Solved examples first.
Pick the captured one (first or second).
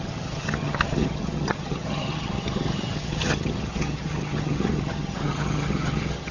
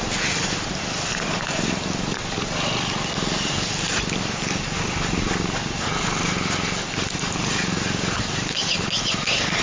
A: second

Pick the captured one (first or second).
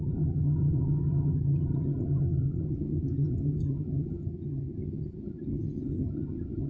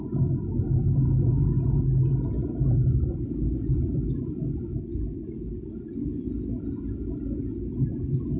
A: second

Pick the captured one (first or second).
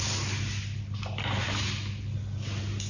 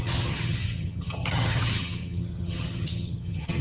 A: first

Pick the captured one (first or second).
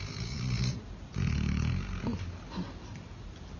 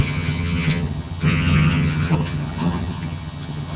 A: first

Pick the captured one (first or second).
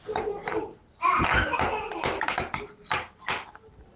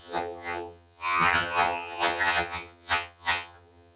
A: first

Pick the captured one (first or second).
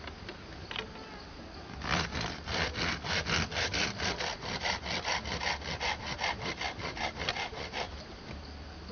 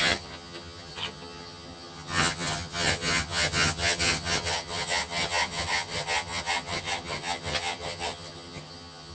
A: first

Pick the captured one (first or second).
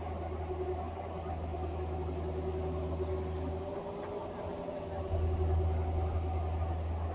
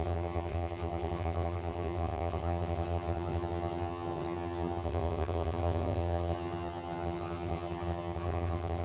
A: first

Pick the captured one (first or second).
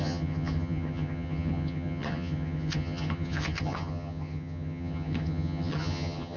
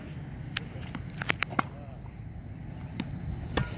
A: second